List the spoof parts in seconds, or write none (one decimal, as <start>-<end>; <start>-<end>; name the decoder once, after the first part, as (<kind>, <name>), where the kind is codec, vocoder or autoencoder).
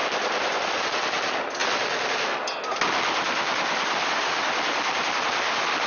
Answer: none